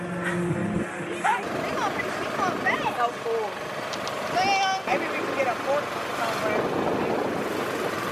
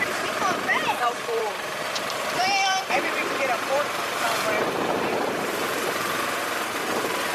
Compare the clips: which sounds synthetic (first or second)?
second